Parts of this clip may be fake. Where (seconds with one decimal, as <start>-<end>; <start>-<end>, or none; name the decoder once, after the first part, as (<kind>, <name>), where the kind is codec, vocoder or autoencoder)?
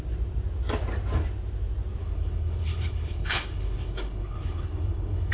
2.0-5.3 (codec, HILCodec)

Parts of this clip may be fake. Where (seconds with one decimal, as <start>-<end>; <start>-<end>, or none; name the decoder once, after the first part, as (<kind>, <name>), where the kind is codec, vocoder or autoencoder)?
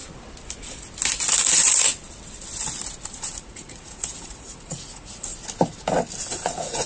1.3-1.9 (vocoder, Vocos); 3.1-5.3; 6.3-6.9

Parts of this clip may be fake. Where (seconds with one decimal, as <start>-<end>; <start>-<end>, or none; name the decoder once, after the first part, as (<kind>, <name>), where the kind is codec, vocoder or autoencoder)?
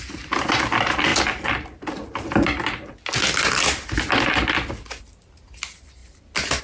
none